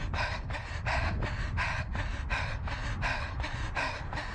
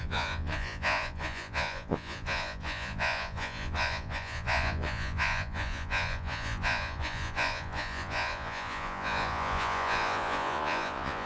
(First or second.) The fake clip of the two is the second